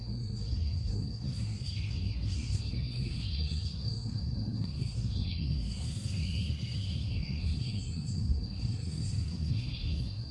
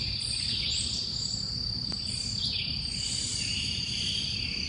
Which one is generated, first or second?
first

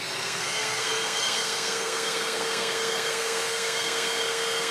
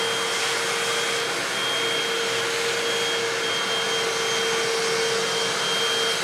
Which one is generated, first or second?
first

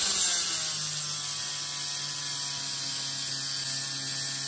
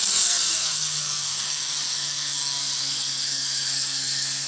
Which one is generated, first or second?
second